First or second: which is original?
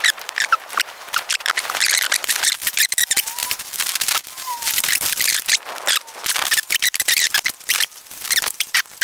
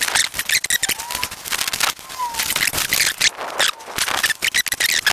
second